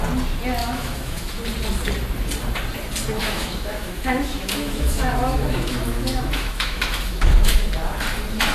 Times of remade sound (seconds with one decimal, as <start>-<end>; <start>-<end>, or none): 0.6-1.4; 3.2-7.7